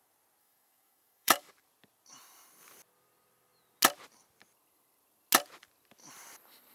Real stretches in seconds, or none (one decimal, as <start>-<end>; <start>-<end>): 0.0-0.4; 1.5-6.7